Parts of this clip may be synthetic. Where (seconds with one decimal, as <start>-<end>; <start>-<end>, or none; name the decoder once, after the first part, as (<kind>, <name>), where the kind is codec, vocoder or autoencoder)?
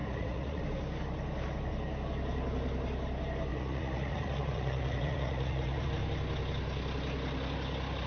0.0-0.6 (vocoder, Vocos); 3.5-5.9